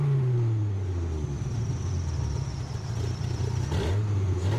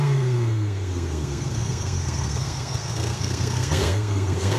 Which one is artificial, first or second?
second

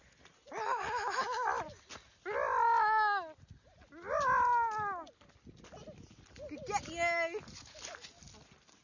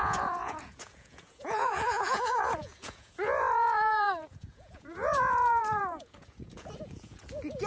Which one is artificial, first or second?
second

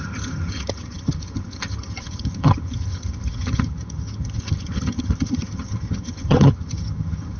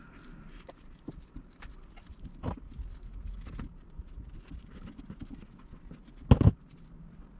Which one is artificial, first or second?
first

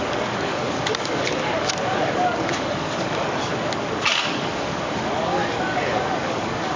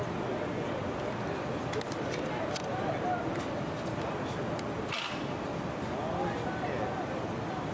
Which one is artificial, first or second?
first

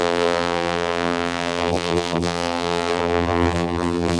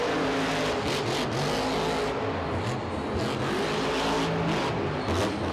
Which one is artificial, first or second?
first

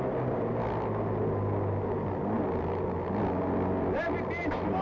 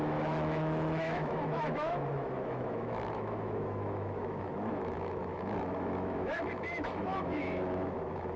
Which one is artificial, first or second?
second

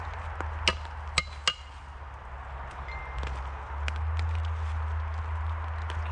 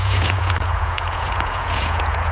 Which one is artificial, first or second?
second